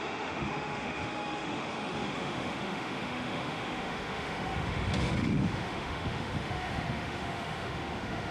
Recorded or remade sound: remade